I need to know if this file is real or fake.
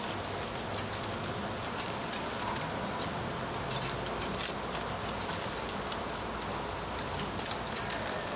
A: real